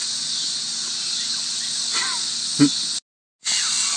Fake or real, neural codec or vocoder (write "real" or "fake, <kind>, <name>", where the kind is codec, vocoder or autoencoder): real